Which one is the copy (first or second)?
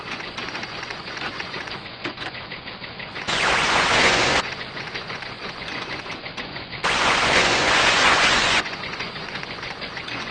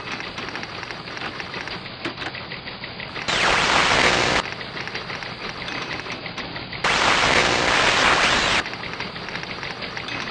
first